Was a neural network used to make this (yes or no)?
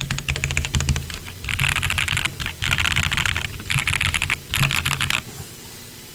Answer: no